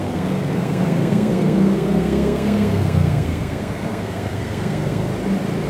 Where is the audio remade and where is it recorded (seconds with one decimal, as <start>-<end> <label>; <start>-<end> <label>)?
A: 0.0-5.1 remade; 5.1-5.7 recorded